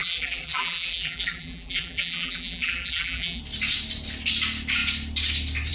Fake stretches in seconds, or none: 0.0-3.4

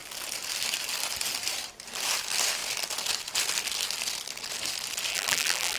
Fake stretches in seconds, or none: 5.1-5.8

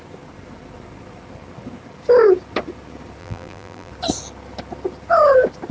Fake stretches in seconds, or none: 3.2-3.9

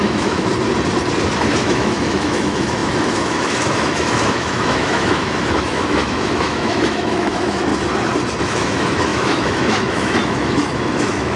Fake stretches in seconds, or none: 0.0-0.5; 1.6-7.7; 8.4-11.4

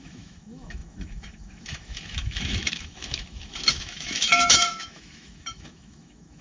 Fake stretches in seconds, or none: 0.0-6.4